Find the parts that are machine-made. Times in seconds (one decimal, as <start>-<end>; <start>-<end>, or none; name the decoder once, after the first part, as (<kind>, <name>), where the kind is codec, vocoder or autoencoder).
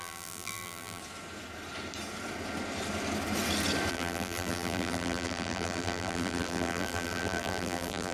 0.0-1.0 (vocoder, BigVGAN v2); 3.9-8.1